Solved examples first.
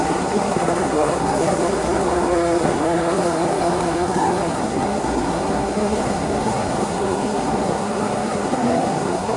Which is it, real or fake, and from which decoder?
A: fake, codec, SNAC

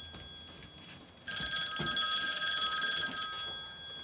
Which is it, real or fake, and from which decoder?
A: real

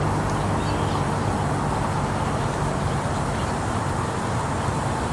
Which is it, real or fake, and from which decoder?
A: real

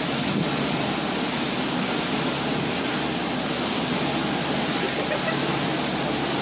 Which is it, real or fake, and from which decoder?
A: real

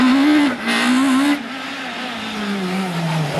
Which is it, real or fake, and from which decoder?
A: real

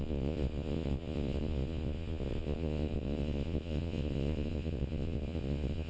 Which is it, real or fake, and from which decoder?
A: fake, vocoder, Vocos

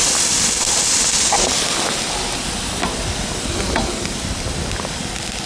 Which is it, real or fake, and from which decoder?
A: real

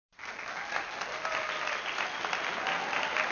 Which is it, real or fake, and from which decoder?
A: real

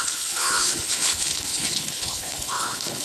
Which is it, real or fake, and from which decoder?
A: fake, codec, HILCodec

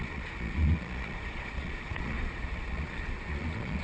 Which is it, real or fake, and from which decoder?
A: fake, vocoder, Vocos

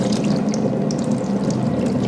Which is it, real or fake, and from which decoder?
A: real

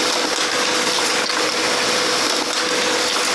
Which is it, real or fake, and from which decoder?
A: real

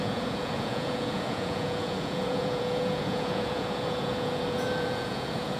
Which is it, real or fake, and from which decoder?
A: fake, vocoder, Vocos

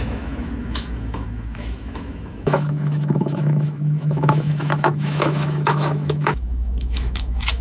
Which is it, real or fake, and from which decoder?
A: fake, autoencoder, DAC-VAE